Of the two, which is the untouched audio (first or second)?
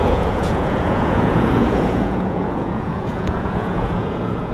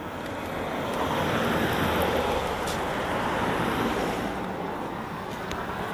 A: second